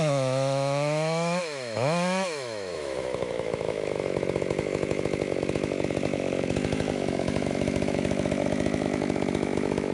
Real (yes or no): no